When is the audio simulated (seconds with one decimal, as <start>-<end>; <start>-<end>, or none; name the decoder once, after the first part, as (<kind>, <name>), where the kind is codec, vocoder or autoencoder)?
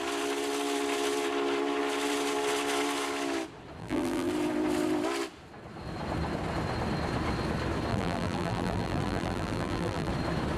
3.8-4.3 (vocoder, BigVGAN v2); 7.9-10.1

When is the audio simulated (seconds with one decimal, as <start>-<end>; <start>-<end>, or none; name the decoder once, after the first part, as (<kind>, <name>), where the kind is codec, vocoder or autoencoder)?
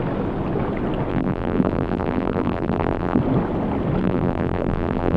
1.1-3.2 (vocoder, BigVGAN v2); 4.0-5.2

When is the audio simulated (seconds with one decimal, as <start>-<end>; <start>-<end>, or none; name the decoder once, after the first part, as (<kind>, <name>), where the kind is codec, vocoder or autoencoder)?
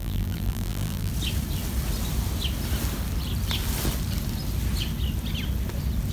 0.0-1.1 (vocoder, BigVGAN v2)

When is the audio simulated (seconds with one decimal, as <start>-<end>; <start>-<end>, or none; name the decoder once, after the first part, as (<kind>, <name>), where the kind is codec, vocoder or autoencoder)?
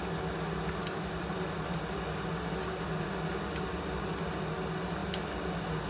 none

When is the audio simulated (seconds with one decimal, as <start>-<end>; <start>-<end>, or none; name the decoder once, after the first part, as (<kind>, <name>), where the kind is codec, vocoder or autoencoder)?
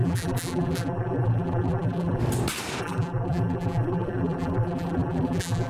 0.0-2.2 (vocoder, BigVGAN v2); 2.8-5.7